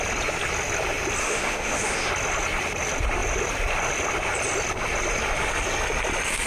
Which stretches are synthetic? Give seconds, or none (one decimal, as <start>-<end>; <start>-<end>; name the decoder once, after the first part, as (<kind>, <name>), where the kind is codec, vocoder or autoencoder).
1.2-2.1 (autoencoder, DAC-VAE)